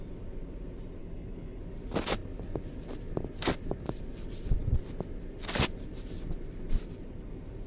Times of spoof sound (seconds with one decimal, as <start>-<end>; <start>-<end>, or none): 1.0-1.6